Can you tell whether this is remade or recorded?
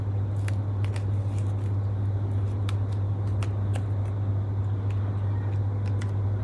recorded